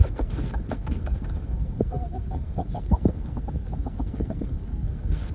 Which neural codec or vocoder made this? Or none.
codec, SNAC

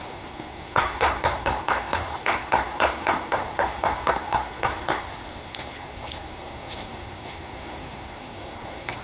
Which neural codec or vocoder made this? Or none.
codec, SNAC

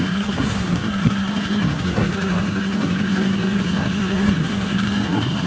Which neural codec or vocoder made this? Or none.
codec, SNAC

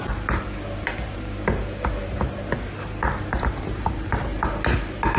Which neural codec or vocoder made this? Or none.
none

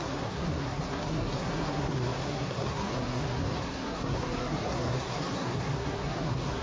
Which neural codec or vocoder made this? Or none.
codec, SNAC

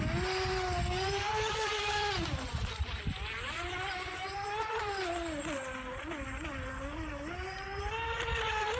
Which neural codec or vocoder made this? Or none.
none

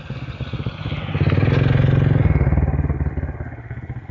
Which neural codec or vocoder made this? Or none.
none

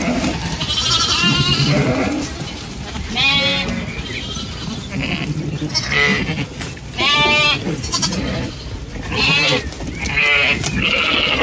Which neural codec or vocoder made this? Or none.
none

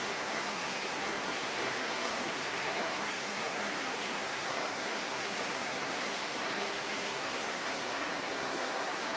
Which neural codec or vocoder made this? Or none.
codec, SNAC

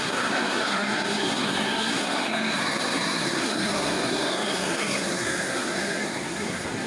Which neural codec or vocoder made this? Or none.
codec, SNAC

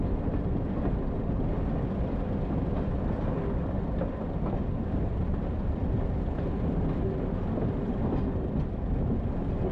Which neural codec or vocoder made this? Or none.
none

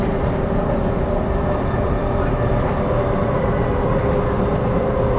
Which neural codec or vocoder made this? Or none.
none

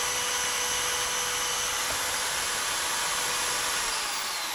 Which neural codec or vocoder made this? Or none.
none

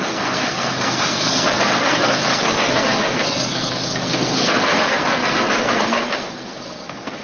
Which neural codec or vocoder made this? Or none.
codec, SNAC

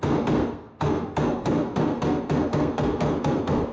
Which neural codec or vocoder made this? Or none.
codec, SNAC